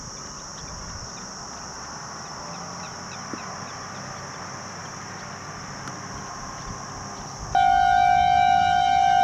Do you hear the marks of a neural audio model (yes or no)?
no